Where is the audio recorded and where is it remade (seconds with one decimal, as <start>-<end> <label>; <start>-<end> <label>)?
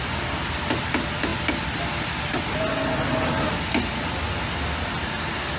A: 0.0-5.6 recorded